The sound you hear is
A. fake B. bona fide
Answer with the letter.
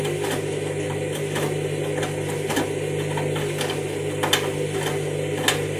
B